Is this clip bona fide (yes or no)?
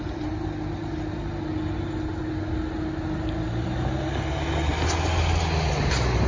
yes